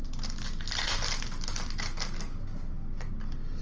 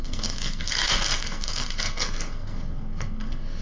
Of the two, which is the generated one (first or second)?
second